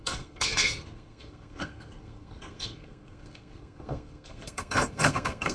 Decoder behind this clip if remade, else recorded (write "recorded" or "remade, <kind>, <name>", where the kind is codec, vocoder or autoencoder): remade, codec, SNAC